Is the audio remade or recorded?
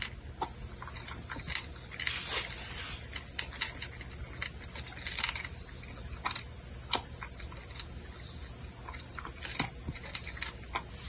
recorded